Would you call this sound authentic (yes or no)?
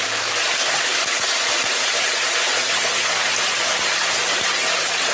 yes